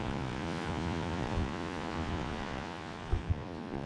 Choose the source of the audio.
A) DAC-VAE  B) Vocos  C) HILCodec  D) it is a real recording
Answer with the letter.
B